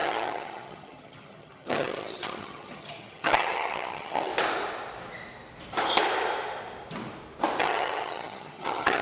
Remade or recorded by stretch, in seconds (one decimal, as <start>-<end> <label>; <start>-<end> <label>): 0.0-4.3 remade; 4.3-7.6 recorded; 7.6-9.0 remade